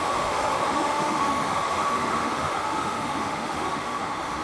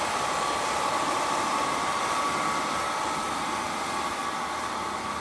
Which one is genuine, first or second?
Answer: second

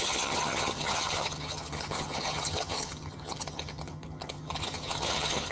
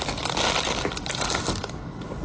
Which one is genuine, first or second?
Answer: second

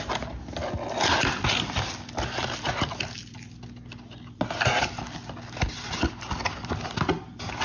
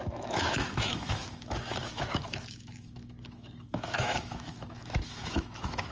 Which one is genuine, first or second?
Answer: first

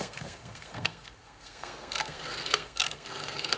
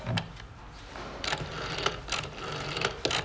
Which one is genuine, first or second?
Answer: second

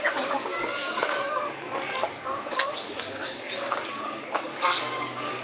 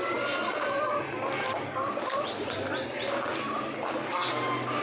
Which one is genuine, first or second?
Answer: second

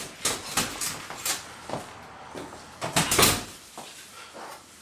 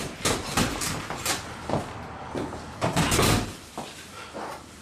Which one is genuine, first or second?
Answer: first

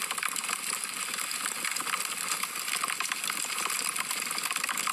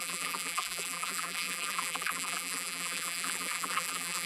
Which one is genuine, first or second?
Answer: first